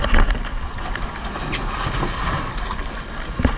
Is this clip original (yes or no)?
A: yes